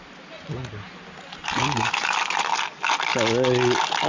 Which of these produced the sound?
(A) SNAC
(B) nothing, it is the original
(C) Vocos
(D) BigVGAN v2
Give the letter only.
B